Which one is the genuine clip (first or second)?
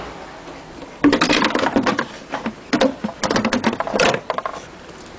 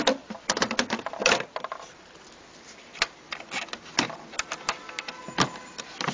first